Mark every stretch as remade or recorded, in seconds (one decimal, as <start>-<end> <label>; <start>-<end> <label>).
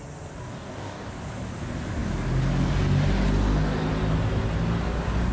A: 0.0-0.5 recorded; 0.5-1.1 remade; 1.1-5.3 recorded